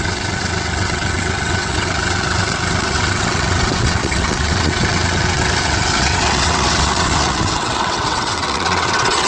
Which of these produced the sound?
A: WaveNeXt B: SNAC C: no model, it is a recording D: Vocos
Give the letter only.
A